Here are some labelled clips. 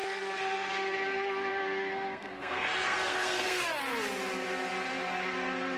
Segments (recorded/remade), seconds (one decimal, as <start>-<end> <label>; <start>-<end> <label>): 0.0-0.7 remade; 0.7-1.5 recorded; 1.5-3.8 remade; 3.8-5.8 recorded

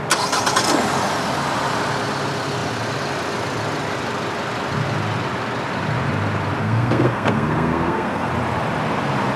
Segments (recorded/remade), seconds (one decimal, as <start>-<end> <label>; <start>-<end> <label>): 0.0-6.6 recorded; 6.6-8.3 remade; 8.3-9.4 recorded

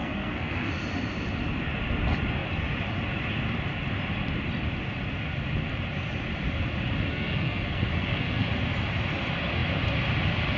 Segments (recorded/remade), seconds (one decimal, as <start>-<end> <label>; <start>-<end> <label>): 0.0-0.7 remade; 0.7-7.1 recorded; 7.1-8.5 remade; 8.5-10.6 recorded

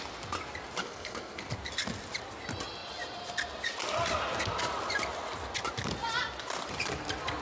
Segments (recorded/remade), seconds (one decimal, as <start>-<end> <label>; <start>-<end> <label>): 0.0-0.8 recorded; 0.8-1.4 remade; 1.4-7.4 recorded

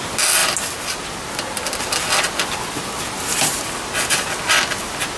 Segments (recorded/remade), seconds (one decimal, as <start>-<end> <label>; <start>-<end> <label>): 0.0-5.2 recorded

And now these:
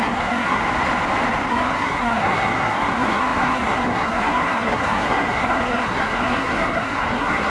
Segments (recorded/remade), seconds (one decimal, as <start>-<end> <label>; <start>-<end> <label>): 0.0-0.6 remade; 0.6-1.5 recorded; 1.5-7.5 remade

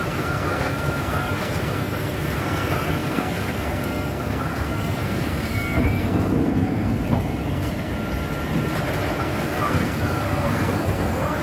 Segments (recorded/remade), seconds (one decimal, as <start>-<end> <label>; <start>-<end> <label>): 0.0-7.9 remade; 7.9-9.2 recorded; 9.2-11.4 remade